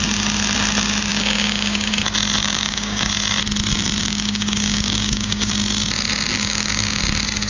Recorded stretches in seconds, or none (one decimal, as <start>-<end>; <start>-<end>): 0.0-1.1; 1.9-2.4; 3.1-4.0; 5.5-6.3; 7.0-7.5